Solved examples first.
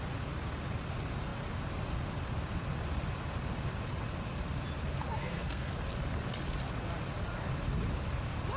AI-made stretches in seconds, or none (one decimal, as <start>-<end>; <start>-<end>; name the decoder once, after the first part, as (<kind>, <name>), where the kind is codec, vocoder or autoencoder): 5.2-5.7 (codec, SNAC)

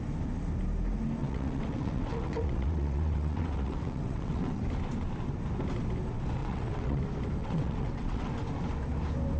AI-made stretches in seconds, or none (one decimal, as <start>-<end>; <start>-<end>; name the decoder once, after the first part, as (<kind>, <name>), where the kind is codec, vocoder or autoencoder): 1.2-4.6 (vocoder, WaveNeXt); 6.4-7.0; 7.4-8.3

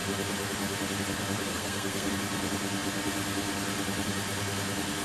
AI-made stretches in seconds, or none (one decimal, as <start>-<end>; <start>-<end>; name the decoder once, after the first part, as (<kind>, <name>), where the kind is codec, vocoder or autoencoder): 1.5-2.1 (codec, SNAC)